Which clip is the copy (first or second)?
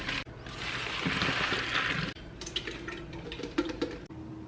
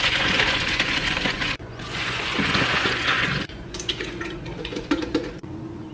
second